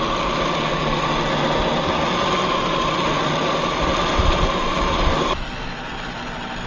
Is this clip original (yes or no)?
yes